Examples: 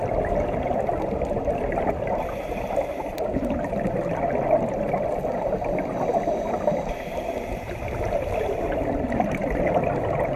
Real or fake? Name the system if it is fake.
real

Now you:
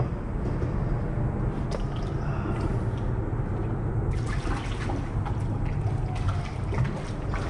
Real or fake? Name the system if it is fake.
real